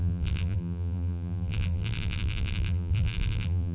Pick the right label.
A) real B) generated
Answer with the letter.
B